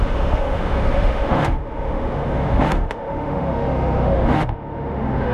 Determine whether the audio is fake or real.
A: fake